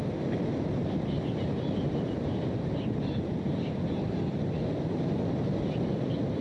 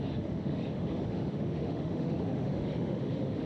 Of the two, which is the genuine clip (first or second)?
first